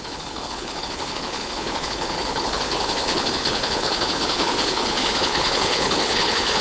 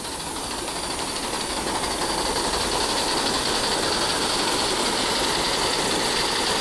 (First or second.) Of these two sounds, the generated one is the first